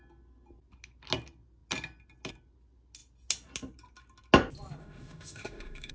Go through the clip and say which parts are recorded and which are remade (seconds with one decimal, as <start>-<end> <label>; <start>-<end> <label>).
0.0-4.8 recorded; 4.8-5.9 remade